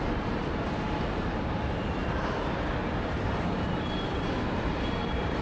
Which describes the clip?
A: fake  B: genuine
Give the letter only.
A